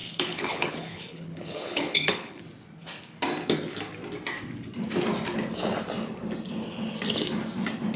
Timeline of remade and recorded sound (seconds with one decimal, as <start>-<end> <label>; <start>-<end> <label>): 0.0-2.4 remade; 2.4-8.0 recorded